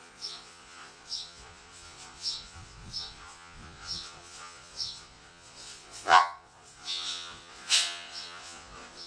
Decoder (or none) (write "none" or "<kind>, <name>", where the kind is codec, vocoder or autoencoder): vocoder, Vocos